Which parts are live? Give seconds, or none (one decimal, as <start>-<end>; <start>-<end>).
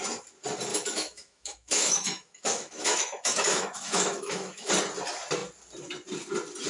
0.0-0.7; 4.7-6.7